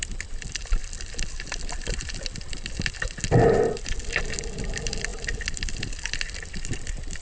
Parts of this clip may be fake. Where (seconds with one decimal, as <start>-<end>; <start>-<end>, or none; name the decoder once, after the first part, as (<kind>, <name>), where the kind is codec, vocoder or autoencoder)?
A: 0.8-4.2 (vocoder, BigVGAN v2)